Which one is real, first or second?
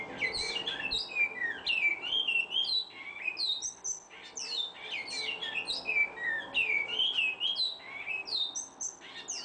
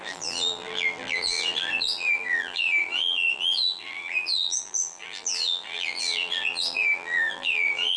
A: first